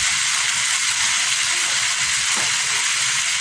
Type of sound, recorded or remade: recorded